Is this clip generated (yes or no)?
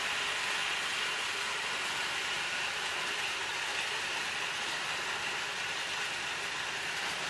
no